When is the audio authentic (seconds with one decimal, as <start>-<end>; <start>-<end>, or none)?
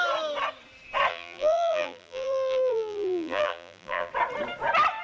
0.0-1.1; 4.1-5.0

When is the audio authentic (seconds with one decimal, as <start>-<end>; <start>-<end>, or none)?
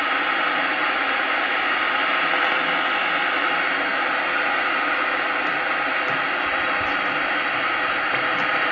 0.0-8.7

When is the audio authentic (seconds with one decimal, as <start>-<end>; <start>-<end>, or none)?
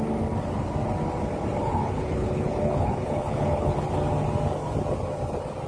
0.0-1.6; 3.9-5.7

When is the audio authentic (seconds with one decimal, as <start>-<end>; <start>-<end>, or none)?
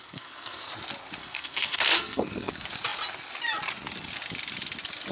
0.7-1.2; 2.5-5.1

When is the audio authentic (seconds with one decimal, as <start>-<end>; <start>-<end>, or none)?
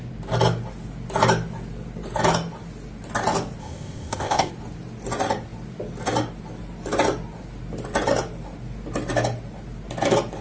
0.0-3.6; 4.5-10.4